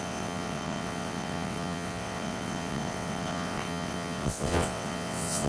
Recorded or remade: remade